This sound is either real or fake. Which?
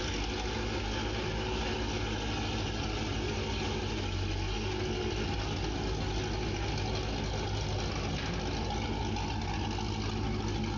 real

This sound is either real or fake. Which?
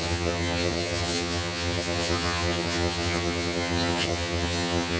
fake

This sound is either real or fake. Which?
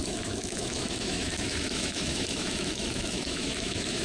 fake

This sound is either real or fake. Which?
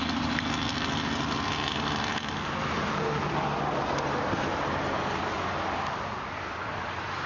real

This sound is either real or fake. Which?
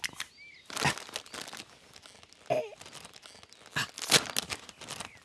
real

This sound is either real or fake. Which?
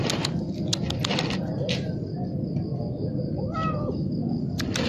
real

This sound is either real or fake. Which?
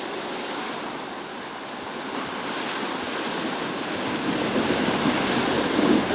real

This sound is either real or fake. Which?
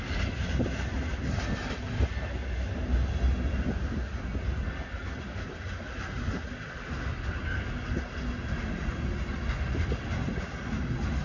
real